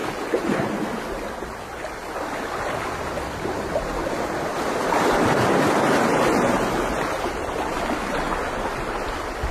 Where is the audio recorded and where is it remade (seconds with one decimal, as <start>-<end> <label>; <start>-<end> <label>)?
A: 0.0-9.5 recorded